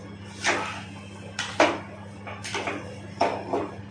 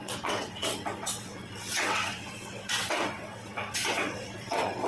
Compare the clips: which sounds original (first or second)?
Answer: first